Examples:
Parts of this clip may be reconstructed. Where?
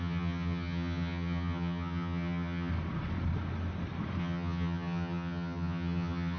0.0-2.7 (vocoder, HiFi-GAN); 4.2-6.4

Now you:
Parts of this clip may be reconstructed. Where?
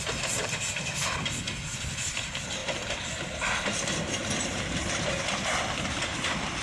none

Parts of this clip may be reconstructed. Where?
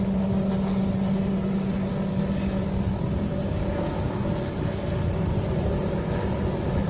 3.4-4.3 (codec, DAC)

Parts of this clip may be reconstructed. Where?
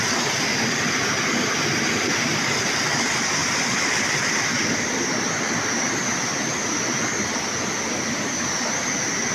none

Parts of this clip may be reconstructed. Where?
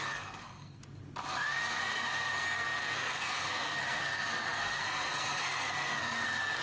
0.0-0.8 (codec, SNAC); 1.3-6.6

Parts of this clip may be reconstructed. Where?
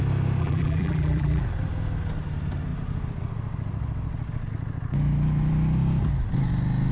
0.4-1.4 (vocoder, BigVGAN v2)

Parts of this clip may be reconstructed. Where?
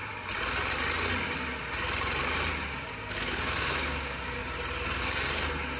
2.8-4.4 (codec, DAC); 5.0-5.8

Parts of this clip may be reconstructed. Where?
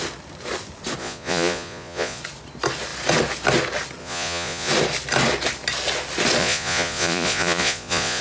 1.0-2.2 (vocoder, Vocos); 4.0-4.7; 6.4-8.2